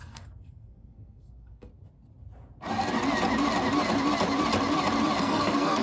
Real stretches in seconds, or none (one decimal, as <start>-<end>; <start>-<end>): 1.7-5.2